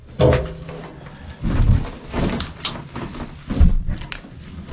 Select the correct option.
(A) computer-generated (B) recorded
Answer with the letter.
B